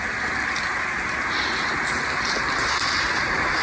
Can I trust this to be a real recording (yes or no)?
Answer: yes